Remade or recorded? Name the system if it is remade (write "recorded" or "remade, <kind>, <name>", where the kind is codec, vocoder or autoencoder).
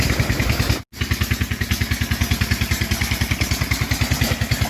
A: recorded